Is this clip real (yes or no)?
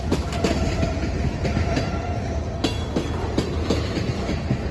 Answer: yes